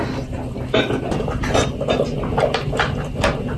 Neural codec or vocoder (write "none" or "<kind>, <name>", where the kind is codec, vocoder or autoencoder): none